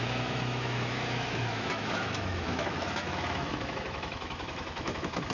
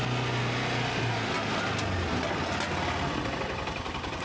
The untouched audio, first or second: second